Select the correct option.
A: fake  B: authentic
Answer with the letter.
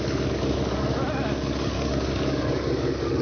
A